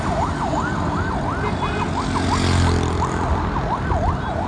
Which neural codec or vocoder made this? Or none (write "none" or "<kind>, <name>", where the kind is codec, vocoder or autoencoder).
none